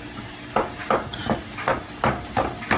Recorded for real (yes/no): yes